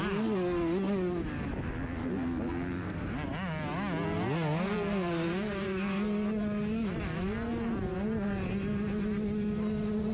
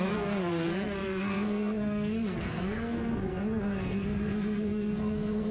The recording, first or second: first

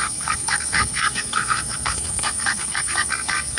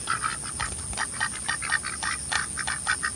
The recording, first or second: second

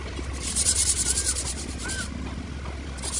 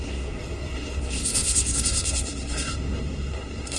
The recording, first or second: first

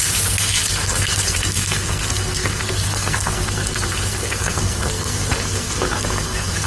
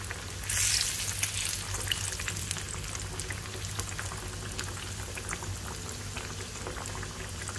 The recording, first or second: second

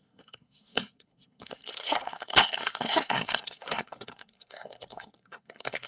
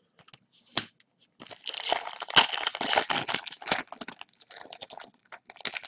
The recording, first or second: second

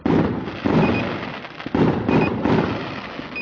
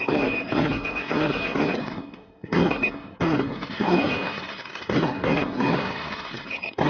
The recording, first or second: first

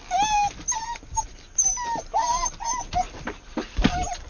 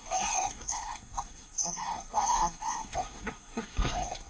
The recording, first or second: first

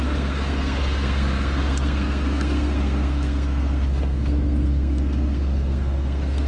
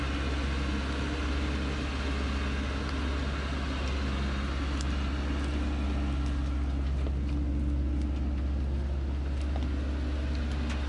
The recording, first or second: second